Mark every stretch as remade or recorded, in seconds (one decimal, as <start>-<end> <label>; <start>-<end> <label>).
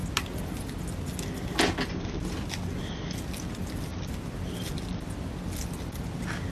0.0-6.5 recorded